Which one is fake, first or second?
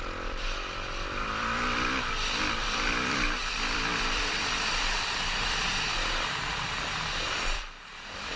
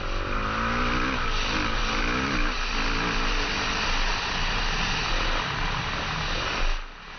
first